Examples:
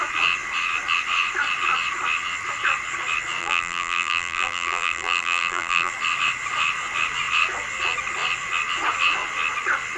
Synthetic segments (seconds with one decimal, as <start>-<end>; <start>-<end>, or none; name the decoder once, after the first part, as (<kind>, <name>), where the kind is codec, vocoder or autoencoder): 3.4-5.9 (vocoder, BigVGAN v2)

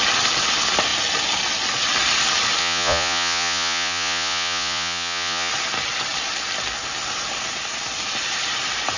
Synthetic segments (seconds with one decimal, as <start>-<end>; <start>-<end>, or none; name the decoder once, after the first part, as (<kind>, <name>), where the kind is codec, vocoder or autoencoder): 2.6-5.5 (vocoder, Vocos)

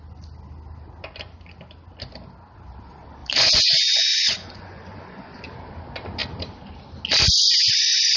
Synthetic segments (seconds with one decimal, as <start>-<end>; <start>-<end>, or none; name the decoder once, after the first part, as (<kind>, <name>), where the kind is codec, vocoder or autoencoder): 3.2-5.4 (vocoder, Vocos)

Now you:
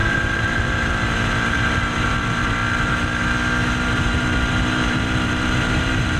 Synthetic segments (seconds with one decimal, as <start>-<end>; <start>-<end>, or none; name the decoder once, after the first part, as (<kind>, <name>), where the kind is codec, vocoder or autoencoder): 0.0-2.6 (vocoder, BigVGAN v2); 3.9-6.2

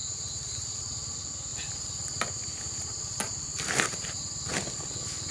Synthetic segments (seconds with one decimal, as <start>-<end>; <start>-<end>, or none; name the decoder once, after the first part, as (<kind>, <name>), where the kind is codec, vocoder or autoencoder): 0.0-0.8 (vocoder, BigVGAN v2); 1.5-2.2; 3.5-4.5